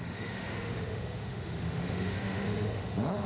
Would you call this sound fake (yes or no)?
yes